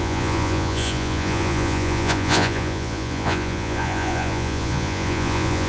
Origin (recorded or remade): remade